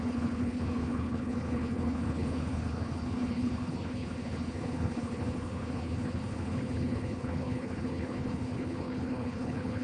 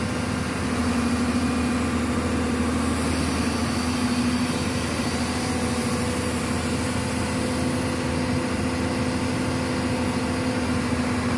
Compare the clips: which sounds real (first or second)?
second